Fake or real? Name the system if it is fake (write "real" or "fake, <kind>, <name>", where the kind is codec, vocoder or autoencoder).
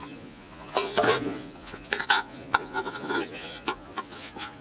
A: fake, vocoder, Vocos